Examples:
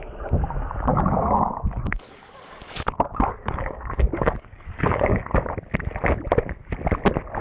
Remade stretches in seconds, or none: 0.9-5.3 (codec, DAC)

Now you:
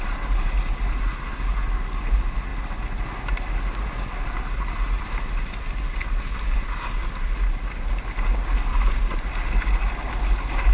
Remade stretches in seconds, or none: none

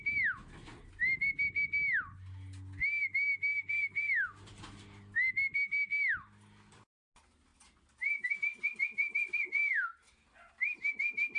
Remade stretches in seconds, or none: none

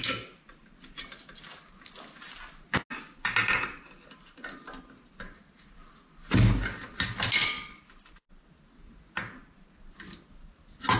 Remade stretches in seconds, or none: none